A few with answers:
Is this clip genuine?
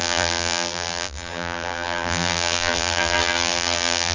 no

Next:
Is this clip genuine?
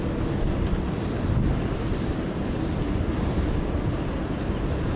yes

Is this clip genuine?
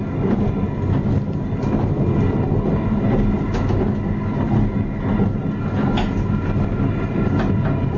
yes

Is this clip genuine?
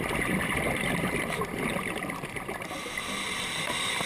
no